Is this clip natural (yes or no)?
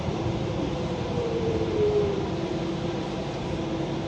no